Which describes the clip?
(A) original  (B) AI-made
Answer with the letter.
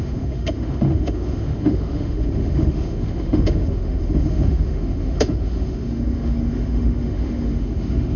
B